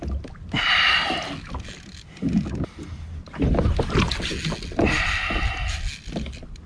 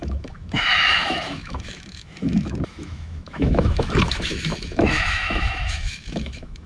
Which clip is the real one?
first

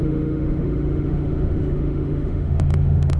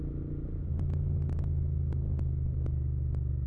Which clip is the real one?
second